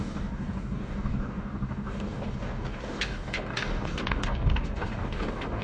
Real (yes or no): no